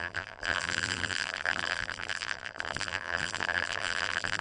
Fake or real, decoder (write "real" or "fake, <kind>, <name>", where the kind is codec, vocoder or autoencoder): fake, vocoder, BigVGAN v2